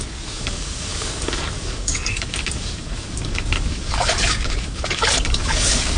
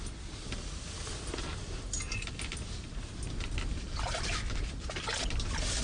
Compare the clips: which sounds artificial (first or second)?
first